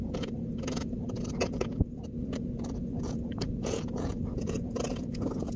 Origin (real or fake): fake